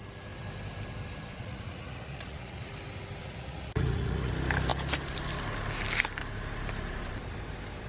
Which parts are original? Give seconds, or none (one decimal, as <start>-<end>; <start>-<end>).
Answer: 0.0-1.4; 2.7-3.2; 4.3-7.9